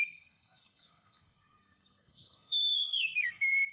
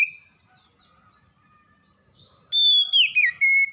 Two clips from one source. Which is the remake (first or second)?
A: first